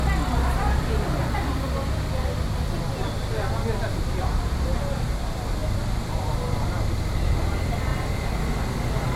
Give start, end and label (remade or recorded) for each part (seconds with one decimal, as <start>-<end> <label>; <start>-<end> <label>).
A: 0.0-3.9 recorded; 3.9-4.8 remade; 4.8-5.6 recorded; 5.6-6.3 remade; 6.3-7.9 recorded; 7.9-8.6 remade; 8.6-9.2 recorded